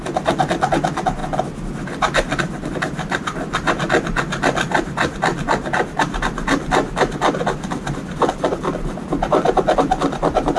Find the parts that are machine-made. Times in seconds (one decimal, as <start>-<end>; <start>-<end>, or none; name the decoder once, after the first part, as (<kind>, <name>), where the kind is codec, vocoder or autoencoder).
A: none